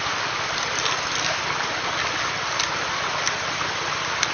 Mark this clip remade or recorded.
recorded